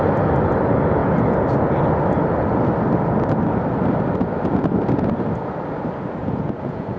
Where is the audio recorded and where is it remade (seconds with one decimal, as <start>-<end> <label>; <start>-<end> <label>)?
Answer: 0.0-6.2 recorded; 6.2-7.0 remade